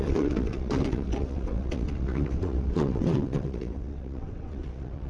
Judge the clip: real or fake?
fake